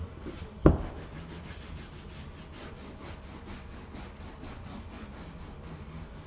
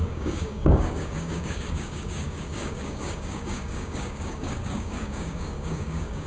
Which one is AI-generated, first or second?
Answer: second